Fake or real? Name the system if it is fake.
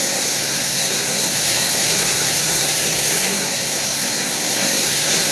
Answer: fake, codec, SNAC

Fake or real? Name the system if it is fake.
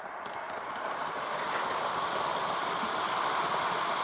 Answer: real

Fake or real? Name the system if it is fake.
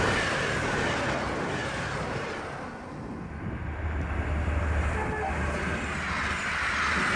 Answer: real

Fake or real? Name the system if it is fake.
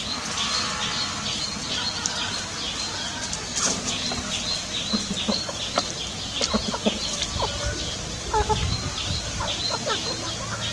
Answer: real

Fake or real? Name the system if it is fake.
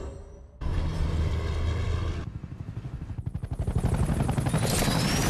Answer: real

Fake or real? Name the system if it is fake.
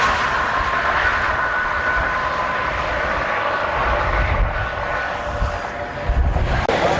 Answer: real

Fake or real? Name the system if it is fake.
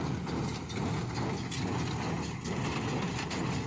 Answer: real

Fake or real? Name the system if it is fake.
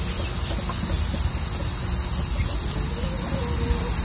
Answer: real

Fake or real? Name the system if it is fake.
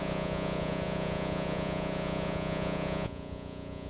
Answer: fake, vocoder, Vocos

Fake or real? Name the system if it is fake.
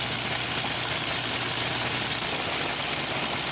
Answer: real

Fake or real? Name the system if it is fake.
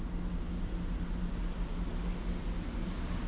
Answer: real